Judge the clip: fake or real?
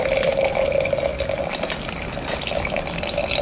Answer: real